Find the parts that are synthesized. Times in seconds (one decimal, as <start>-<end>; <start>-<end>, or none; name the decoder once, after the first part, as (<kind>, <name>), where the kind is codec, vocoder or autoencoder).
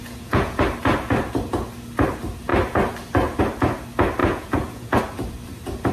0.0-0.6 (vocoder, Vocos); 4.2-5.0